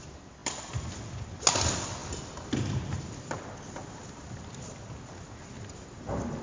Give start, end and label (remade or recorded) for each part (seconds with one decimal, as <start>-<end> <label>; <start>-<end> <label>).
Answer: 0.0-6.4 recorded